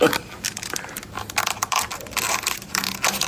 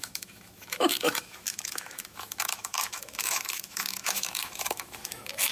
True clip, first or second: first